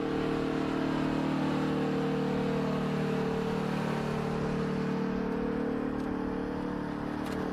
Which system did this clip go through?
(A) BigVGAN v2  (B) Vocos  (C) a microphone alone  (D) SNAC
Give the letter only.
C